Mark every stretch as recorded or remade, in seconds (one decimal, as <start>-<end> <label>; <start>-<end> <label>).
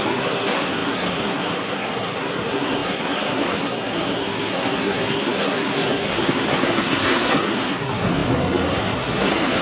0.0-9.6 remade